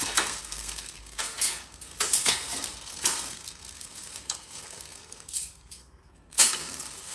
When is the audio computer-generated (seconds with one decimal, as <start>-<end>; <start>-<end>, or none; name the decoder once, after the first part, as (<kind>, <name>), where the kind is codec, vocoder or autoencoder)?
0.0-7.1 (codec, SNAC)